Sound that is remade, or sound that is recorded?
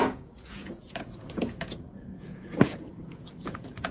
remade